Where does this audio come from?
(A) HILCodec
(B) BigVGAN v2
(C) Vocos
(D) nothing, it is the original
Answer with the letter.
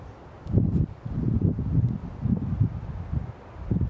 D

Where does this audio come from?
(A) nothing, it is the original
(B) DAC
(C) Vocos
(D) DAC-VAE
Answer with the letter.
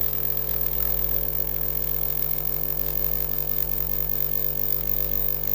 D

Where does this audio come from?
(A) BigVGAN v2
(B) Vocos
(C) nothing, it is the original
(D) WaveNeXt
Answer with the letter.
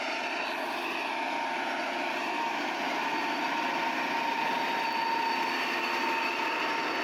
C